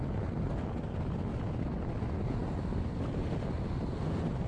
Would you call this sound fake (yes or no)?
no